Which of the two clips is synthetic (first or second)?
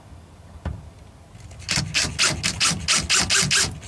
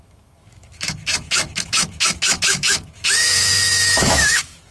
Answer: second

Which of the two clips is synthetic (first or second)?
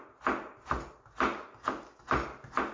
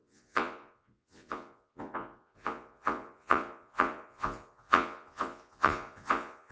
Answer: second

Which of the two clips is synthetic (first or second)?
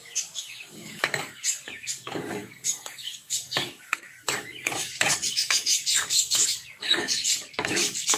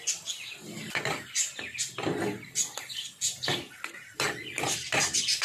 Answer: first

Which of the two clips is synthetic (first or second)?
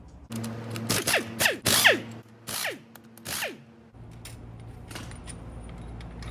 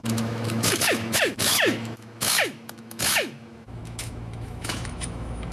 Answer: second